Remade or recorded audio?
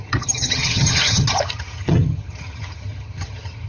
remade